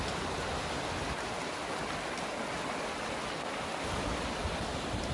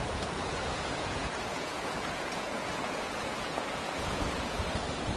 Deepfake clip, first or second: second